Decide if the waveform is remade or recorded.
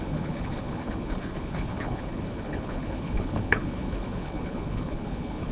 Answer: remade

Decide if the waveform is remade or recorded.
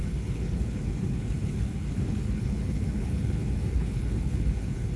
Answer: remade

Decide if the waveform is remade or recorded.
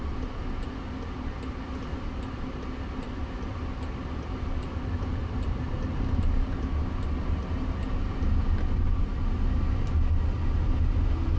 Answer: recorded